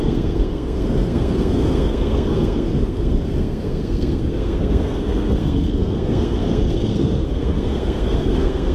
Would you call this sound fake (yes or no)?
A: yes